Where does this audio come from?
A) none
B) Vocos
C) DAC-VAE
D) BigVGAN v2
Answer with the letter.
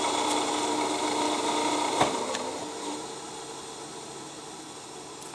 A